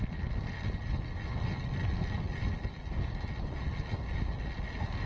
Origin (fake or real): real